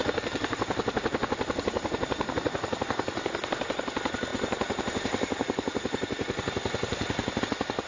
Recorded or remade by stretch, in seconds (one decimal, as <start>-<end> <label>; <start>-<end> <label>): 0.0-2.3 remade; 2.3-4.3 recorded; 4.3-7.4 remade; 7.4-7.9 recorded